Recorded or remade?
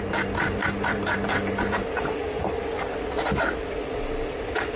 recorded